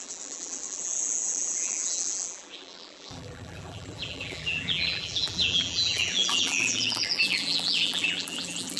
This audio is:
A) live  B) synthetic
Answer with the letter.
B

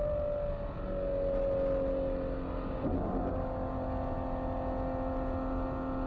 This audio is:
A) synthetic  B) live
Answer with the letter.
B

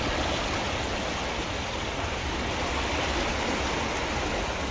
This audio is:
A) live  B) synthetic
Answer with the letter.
A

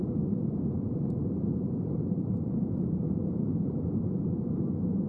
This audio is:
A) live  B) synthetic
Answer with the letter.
B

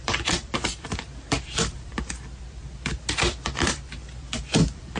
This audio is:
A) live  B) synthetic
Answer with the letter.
B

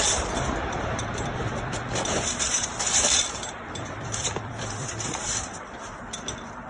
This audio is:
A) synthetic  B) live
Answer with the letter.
A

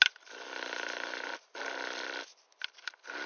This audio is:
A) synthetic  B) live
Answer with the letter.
B